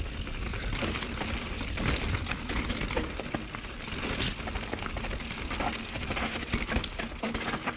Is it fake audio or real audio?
real